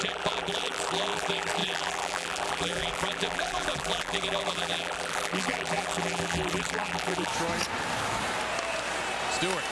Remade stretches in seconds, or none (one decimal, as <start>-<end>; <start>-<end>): 0.0-7.3